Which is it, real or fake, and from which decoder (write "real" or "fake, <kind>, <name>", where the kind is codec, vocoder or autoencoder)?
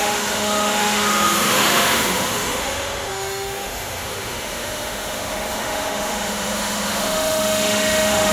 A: fake, autoencoder, DAC-VAE